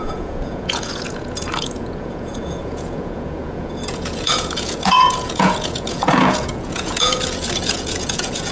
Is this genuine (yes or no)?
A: no